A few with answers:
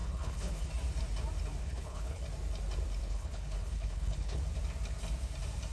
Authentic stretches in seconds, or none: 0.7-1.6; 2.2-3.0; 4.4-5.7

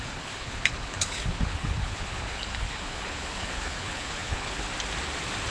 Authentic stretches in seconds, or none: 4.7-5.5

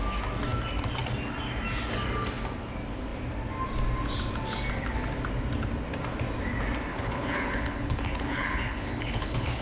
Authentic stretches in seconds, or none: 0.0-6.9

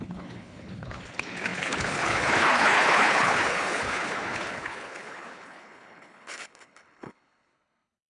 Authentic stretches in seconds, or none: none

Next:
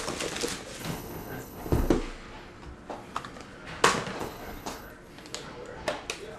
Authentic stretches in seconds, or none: 0.0-0.8; 1.9-4.2; 4.9-6.4

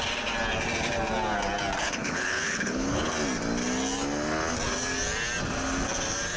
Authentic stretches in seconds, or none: 0.0-1.8; 3.1-6.4

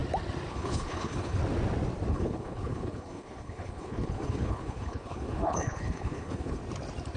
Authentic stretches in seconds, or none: 0.0-0.5; 1.4-2.1; 6.6-7.2

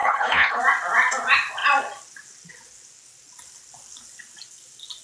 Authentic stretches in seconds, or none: 0.6-5.0